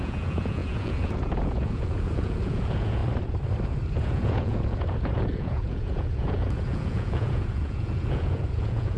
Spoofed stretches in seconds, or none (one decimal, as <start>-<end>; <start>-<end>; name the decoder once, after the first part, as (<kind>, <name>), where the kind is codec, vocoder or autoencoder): 0.0-3.0 (vocoder, Vocos); 3.9-9.0